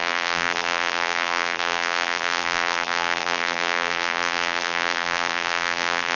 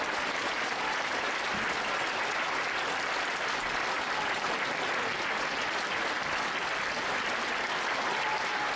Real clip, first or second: second